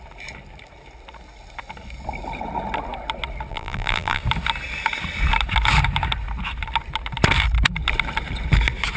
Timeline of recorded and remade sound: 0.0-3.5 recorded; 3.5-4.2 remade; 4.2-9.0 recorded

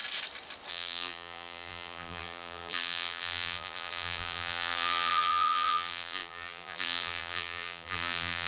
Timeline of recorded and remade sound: 0.0-0.7 recorded; 0.7-8.5 remade

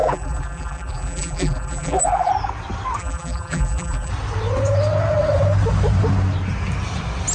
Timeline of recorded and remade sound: 0.0-2.3 remade; 2.3-3.0 recorded; 3.0-4.1 remade; 4.1-7.3 recorded

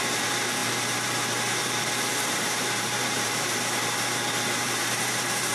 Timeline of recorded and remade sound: 0.0-0.6 remade; 0.6-1.6 recorded; 1.6-3.8 remade; 3.8-4.6 recorded; 4.6-5.5 remade

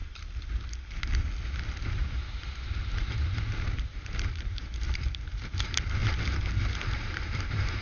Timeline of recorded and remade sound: 0.0-1.6 recorded; 1.6-6.0 remade; 6.0-6.9 recorded; 6.9-7.8 remade